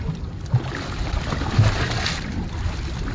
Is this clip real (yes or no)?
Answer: yes